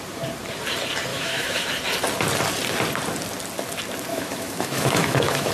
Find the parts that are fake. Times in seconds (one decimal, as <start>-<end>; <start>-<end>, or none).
1.1-1.6; 4.1-5.5